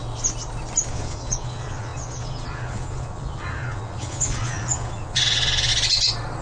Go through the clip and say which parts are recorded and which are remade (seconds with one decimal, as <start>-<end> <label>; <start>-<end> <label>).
0.0-0.9 recorded; 0.9-5.7 remade; 5.7-6.4 recorded